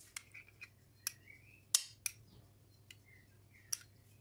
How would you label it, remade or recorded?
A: recorded